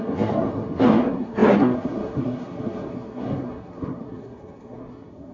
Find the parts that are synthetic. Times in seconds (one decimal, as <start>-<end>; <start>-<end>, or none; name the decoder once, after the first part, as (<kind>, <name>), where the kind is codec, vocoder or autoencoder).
0.0-5.3 (codec, SNAC)